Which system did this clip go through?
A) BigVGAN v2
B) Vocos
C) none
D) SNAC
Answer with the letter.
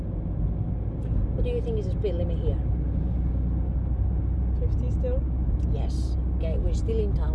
C